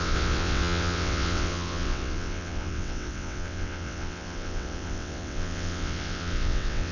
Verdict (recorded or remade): remade